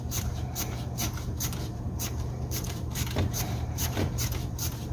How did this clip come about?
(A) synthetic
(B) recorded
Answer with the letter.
A